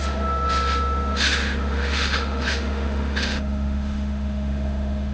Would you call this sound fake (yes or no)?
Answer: yes